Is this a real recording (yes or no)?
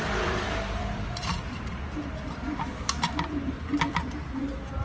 no